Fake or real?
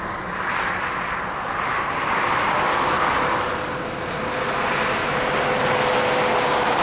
real